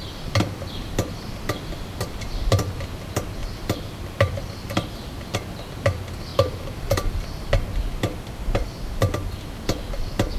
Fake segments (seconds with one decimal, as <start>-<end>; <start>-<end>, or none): 3.4-4.3; 6.3-7.5